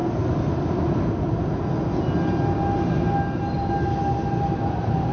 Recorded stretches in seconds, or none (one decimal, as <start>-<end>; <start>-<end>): 0.0-5.1